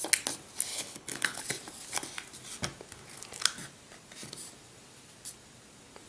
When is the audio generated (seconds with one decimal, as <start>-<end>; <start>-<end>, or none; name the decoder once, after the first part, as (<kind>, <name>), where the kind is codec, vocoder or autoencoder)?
0.7-1.4 (codec, HILCodec)